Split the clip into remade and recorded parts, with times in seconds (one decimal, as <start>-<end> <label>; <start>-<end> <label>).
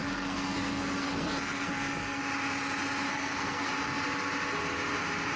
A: 0.0-2.2 remade; 2.2-3.1 recorded; 3.1-3.7 remade; 3.7-5.4 recorded